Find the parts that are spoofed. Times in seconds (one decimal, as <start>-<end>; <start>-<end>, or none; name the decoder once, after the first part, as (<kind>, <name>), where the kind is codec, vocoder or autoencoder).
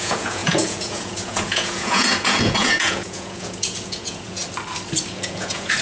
0.0-4.4 (vocoder, Vocos); 5.1-5.8